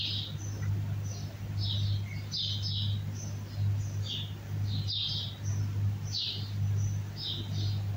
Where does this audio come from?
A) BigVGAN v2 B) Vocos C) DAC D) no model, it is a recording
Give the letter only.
D